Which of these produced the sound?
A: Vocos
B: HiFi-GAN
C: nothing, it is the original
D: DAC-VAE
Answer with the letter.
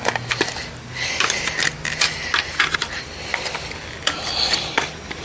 C